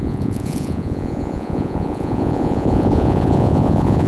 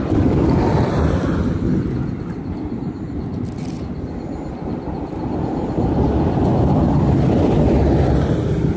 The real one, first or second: second